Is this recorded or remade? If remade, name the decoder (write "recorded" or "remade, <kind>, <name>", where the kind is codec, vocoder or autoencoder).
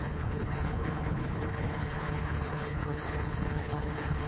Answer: remade, codec, HILCodec